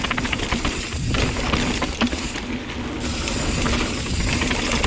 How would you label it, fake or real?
real